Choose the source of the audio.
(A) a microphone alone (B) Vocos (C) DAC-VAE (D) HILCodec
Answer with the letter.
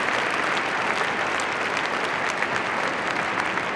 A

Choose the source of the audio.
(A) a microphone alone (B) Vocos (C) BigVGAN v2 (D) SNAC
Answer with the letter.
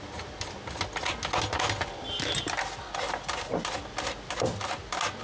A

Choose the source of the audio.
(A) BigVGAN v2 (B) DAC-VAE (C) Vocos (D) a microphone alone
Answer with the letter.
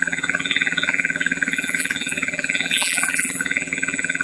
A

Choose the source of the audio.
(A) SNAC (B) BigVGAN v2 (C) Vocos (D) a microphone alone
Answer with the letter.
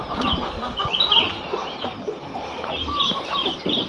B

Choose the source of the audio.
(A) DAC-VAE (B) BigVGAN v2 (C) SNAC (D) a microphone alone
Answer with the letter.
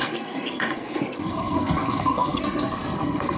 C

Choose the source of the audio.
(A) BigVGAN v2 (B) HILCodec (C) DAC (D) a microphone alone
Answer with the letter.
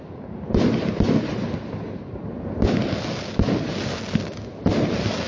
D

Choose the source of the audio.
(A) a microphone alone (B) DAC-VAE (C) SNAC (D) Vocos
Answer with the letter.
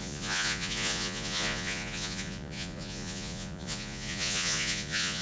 D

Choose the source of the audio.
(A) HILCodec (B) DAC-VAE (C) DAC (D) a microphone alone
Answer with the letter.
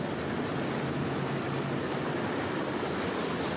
D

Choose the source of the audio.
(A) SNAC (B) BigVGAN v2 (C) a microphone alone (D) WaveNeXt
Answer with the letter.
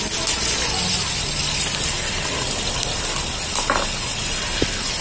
C